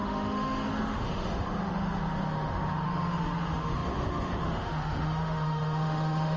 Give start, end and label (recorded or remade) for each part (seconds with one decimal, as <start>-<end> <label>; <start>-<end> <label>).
0.0-6.4 remade